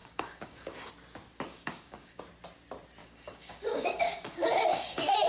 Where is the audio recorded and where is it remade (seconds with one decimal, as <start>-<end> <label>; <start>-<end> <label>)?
0.0-0.9 remade; 0.9-1.5 recorded; 1.5-2.2 remade; 2.2-3.0 recorded; 3.0-5.3 remade